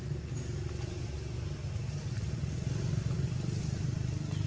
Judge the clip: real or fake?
real